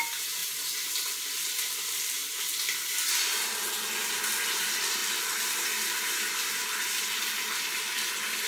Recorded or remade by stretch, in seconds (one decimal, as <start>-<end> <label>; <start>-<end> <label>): 0.0-8.5 recorded